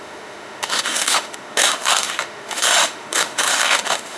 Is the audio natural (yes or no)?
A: no